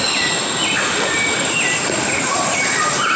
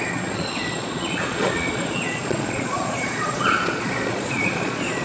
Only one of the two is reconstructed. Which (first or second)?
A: second